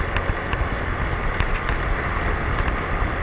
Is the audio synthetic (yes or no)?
no